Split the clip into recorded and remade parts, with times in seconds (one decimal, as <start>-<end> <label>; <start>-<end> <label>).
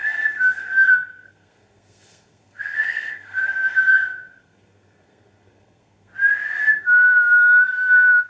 0.0-6.1 remade; 6.1-6.8 recorded; 6.8-8.3 remade